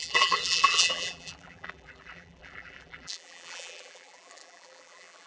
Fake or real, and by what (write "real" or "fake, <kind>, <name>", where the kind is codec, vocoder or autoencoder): fake, vocoder, BigVGAN v2